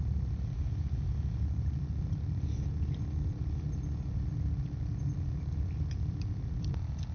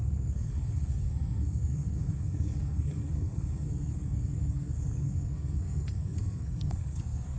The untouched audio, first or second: first